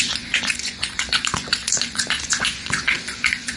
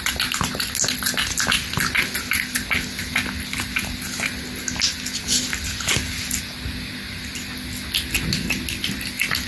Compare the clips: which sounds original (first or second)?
second